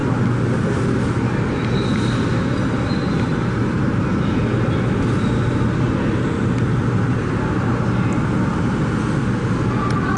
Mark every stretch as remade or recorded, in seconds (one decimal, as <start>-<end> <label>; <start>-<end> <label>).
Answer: 0.0-3.3 recorded; 3.3-3.9 remade; 3.9-10.2 recorded